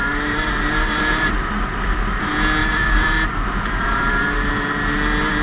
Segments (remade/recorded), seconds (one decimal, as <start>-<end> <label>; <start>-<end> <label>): 0.0-2.2 remade; 2.2-2.6 recorded; 2.6-4.5 remade; 4.5-5.4 recorded